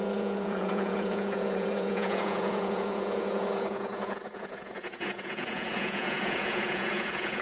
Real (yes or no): no